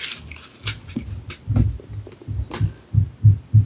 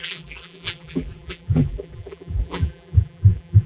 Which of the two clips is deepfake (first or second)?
second